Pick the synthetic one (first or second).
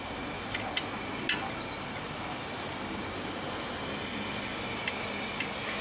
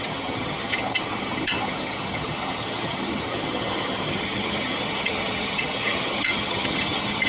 second